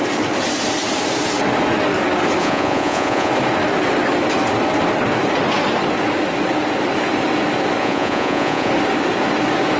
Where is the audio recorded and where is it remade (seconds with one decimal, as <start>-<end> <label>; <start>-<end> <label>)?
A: 0.0-2.4 recorded; 2.4-3.3 remade; 3.3-7.8 recorded; 7.8-8.7 remade; 8.7-9.8 recorded